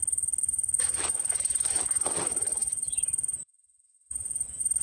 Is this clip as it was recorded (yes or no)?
no